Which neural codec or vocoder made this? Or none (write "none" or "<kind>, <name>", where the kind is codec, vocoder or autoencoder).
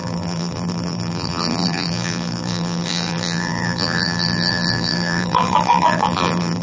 vocoder, BigVGAN v2